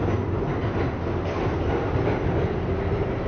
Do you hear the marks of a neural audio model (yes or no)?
no